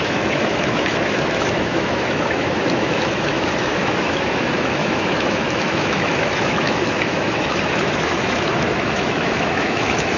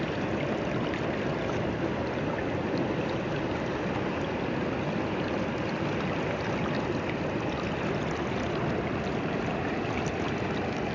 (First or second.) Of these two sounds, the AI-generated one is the first